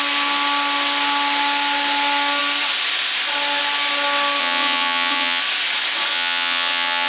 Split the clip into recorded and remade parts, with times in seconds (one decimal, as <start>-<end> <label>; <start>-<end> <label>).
0.0-4.4 recorded; 4.4-5.4 remade; 5.4-6.1 recorded; 6.1-7.1 remade